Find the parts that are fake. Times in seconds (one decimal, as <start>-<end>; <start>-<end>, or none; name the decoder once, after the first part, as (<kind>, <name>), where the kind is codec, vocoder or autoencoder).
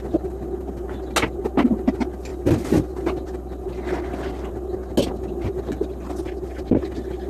none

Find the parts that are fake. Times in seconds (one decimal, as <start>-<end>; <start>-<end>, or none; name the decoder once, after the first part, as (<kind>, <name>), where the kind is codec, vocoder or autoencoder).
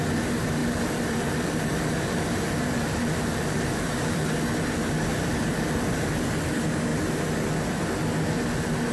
0.6-4.3 (vocoder, BigVGAN v2); 5.1-6.4